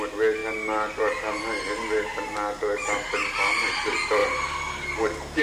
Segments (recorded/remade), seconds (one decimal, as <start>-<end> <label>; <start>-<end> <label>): 0.0-4.2 recorded; 4.2-5.4 remade